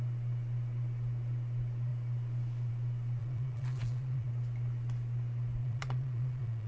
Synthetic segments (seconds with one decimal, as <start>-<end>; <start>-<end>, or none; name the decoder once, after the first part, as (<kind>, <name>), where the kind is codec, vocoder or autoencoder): 3.2-4.3 (vocoder, Vocos); 5.6-6.7